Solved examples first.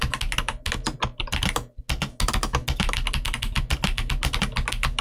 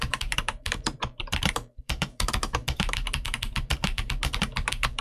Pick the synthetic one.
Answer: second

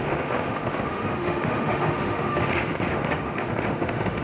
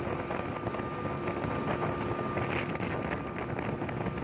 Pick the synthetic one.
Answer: first